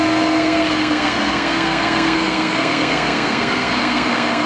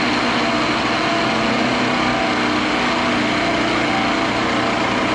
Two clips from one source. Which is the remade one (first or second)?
first